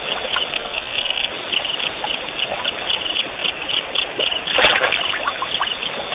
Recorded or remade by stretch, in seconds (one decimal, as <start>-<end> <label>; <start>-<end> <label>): 0.0-0.5 recorded; 0.5-1.3 remade; 1.3-6.1 recorded